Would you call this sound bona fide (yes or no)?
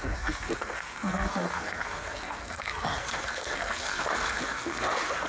no